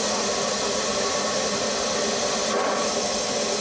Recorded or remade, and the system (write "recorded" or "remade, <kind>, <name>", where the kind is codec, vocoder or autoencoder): recorded